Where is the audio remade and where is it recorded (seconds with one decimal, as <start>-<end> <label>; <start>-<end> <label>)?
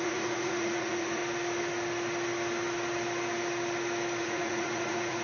0.0-1.2 remade; 1.2-4.2 recorded; 4.2-5.2 remade